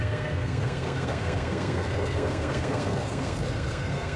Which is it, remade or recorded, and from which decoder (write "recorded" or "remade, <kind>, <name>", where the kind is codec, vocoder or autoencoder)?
remade, codec, SNAC